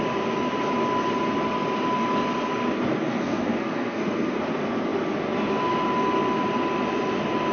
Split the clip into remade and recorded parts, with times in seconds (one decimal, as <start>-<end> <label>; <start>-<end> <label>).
0.0-2.9 recorded; 2.9-4.4 remade; 4.4-7.5 recorded